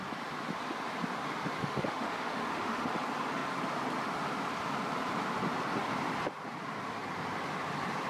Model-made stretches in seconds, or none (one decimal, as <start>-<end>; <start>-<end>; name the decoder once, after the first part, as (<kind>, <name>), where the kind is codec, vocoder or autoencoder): 1.6-2.9 (autoencoder, DAC-VAE)